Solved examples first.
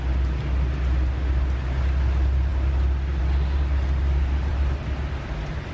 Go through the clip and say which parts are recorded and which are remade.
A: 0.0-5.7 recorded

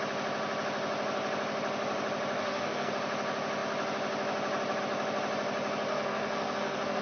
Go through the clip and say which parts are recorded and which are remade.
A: 0.0-2.4 recorded; 2.4-2.9 remade; 2.9-5.9 recorded; 5.9-7.0 remade

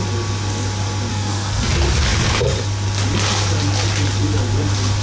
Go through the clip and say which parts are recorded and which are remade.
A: 0.0-1.1 recorded; 1.1-1.7 remade; 1.7-5.0 recorded

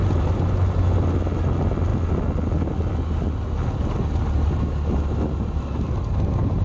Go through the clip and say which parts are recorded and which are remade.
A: 0.0-6.6 recorded

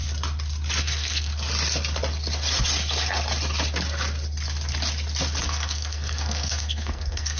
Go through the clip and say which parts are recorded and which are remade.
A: 0.0-0.8 recorded; 0.8-1.3 remade; 1.3-5.4 recorded; 5.4-7.4 remade

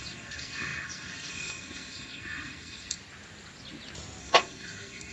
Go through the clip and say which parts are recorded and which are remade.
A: 0.0-3.0 remade; 3.0-4.2 recorded; 4.2-5.1 remade

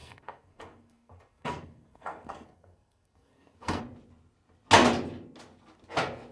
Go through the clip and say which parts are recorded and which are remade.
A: 0.0-3.8 remade; 3.8-6.3 recorded

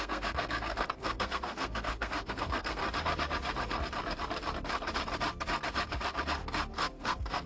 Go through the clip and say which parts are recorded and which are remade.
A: 0.0-2.8 remade; 2.8-6.7 recorded; 6.7-7.5 remade